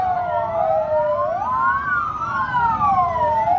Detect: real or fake real